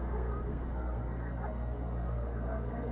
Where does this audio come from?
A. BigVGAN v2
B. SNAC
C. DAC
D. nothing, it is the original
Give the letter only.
B